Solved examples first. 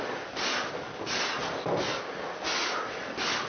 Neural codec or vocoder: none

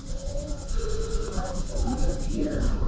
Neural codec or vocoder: vocoder, Vocos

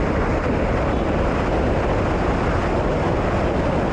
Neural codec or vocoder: none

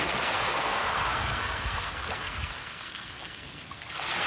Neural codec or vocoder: codec, SNAC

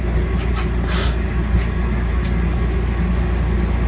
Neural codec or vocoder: none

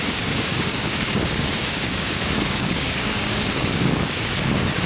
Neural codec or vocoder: codec, DAC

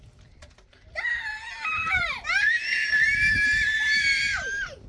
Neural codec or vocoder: vocoder, BigVGAN v2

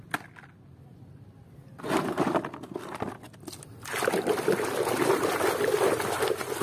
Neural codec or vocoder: none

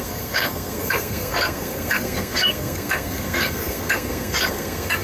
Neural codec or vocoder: codec, SNAC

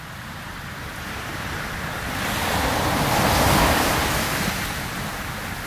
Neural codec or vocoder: none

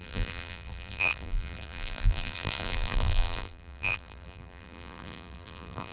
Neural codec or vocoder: vocoder, BigVGAN v2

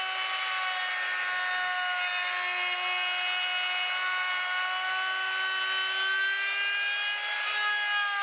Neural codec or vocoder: none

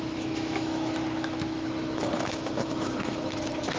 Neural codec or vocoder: autoencoder, DAC-VAE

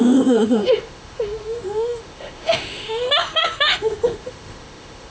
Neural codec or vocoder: autoencoder, DAC-VAE